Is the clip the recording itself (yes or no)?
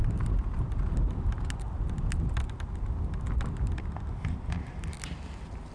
yes